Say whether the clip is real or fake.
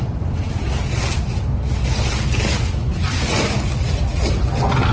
real